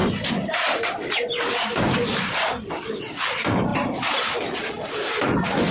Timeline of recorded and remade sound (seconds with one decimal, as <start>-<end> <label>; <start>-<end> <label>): 0.0-5.7 recorded

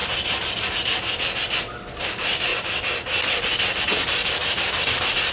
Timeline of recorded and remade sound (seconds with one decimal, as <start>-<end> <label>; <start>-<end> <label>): 0.0-2.0 recorded; 2.0-2.5 remade; 2.5-3.8 recorded; 3.8-5.3 remade

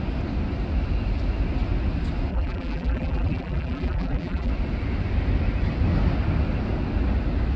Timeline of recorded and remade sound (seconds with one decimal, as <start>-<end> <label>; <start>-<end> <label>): 0.0-2.3 recorded; 2.3-4.5 remade; 4.5-7.6 recorded

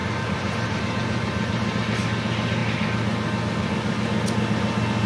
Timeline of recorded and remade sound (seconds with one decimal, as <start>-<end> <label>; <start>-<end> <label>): 0.0-1.9 remade; 1.9-5.1 recorded

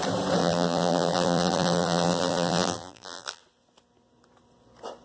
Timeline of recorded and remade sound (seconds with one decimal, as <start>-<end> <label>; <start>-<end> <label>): 0.0-0.4 recorded; 0.4-3.4 remade; 3.4-5.0 recorded

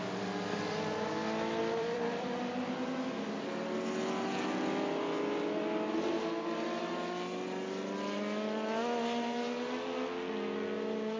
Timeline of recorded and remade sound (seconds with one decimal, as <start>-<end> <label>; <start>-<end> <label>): 0.0-1.6 recorded; 1.6-2.4 remade; 2.4-11.2 recorded